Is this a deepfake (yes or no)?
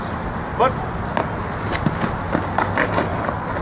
no